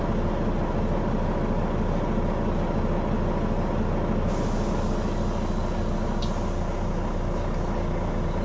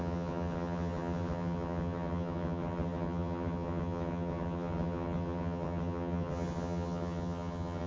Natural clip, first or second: first